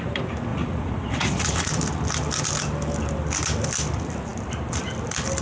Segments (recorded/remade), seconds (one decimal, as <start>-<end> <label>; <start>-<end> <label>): 0.0-0.5 recorded; 0.5-1.7 remade; 1.7-5.4 recorded